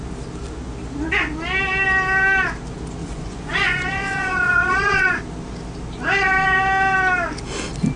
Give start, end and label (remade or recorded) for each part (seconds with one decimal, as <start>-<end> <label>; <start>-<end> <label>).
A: 0.0-3.0 recorded; 3.0-5.2 remade; 5.2-8.0 recorded